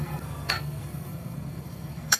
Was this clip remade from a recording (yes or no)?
yes